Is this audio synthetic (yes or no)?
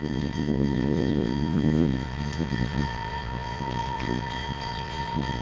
yes